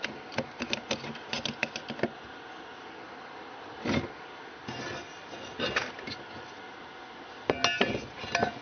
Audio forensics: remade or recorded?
recorded